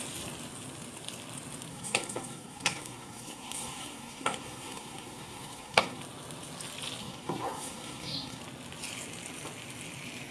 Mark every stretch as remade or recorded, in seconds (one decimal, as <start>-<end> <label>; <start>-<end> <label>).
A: 0.0-1.7 recorded; 1.7-6.0 remade; 6.0-7.0 recorded; 7.0-8.4 remade; 8.4-10.3 recorded